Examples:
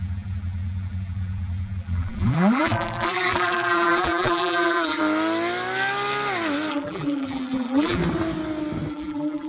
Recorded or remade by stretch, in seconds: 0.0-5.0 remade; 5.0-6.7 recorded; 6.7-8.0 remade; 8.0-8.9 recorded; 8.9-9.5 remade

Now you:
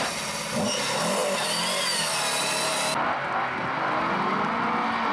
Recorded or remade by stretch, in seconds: 0.0-5.1 recorded

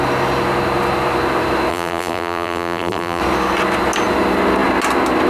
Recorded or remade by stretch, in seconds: 0.0-1.7 recorded; 1.7-3.2 remade; 3.2-5.3 recorded

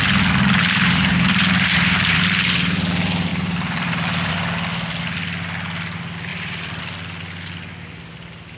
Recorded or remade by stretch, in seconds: 0.0-0.6 recorded; 0.6-2.2 remade; 2.2-3.3 recorded; 3.3-4.3 remade; 4.3-6.3 recorded; 6.3-6.8 remade; 6.8-8.6 recorded

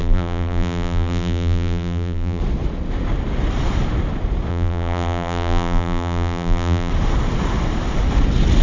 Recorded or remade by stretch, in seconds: 0.0-2.4 remade; 2.4-4.5 recorded; 4.5-6.9 remade; 6.9-8.6 recorded

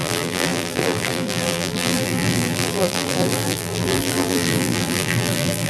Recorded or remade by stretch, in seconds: 0.0-5.7 remade

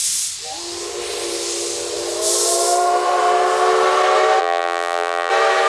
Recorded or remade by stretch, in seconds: 0.0-4.4 recorded; 4.4-5.3 remade; 5.3-5.7 recorded

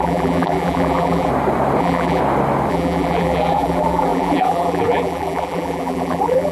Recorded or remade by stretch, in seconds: 0.0-1.3 remade; 1.3-1.8 recorded; 1.8-2.2 remade; 2.2-2.7 recorded; 2.7-6.5 remade